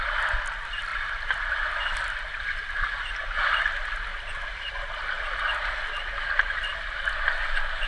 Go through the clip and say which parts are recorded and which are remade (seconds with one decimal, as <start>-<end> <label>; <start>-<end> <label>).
0.0-0.9 recorded; 0.9-3.2 remade; 3.2-4.1 recorded; 4.1-4.7 remade; 4.7-7.9 recorded